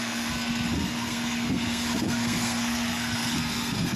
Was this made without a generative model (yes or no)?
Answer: no